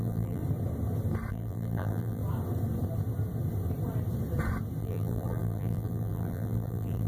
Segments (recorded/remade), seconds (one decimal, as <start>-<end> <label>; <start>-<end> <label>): 0.0-0.4 remade; 0.4-1.3 recorded; 1.3-2.2 remade; 2.2-4.8 recorded; 4.8-7.1 remade

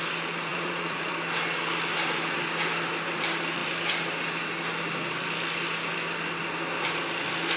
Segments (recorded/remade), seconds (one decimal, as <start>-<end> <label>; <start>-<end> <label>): 0.0-0.5 recorded; 0.5-1.1 remade; 1.1-7.6 recorded

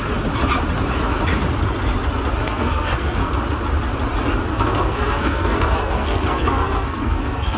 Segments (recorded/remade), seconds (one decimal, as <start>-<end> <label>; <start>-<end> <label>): 0.0-2.4 recorded; 2.4-3.3 remade; 3.3-4.5 recorded; 4.5-7.6 remade